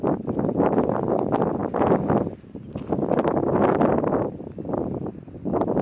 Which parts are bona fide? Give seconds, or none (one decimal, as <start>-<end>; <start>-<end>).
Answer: 0.0-5.8